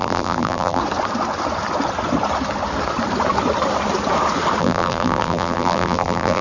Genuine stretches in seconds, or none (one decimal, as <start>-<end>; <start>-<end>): 0.8-4.6